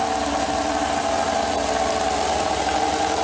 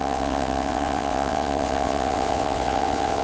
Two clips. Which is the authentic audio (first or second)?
first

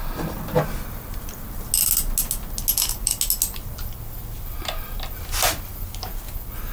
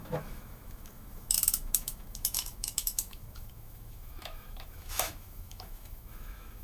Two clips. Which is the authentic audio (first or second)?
first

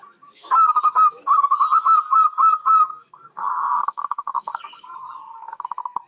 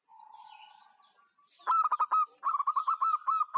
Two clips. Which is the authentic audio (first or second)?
second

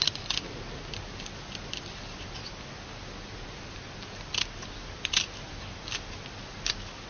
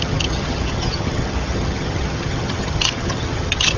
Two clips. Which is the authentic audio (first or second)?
first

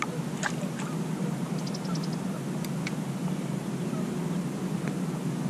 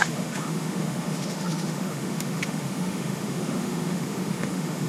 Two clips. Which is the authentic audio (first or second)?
first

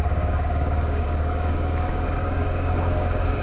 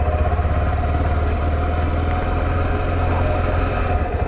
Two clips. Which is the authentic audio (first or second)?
second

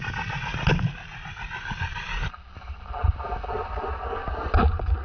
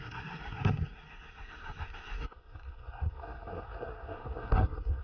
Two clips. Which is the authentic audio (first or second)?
first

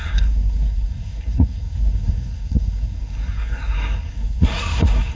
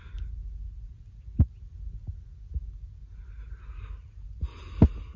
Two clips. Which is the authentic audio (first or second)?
second